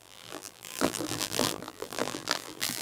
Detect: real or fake fake